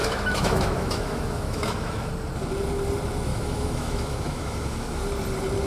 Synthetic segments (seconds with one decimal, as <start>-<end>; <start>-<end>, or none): 0.0-2.1; 3.3-5.0

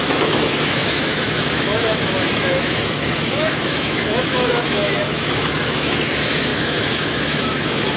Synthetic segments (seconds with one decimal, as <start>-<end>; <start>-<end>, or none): 0.0-8.0

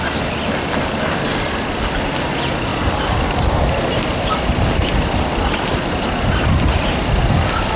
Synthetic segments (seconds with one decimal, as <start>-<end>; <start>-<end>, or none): 2.7-4.3

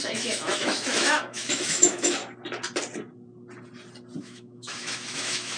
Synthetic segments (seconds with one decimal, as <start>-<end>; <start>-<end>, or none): 0.0-2.2; 4.2-5.6

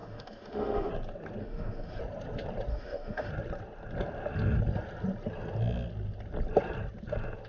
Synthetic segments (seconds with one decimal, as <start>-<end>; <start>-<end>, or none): 0.0-0.9; 1.4-2.0; 2.7-3.3

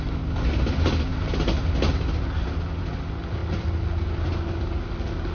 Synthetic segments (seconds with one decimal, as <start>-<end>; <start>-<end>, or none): none

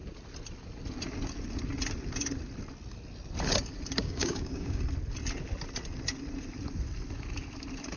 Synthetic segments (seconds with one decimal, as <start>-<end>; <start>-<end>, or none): 4.0-4.8

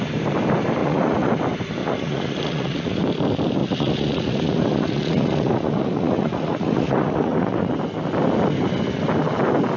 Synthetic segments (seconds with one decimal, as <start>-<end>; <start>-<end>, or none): 0.8-1.3; 1.8-3.0; 3.6-7.7